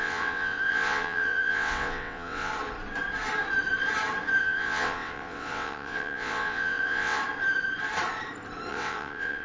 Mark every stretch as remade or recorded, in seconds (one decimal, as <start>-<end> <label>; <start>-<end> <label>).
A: 0.0-2.5 remade; 2.5-4.4 recorded; 4.4-7.2 remade; 7.2-8.7 recorded; 8.7-9.4 remade